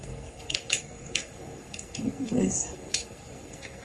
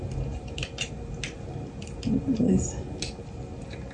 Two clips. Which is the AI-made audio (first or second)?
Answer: first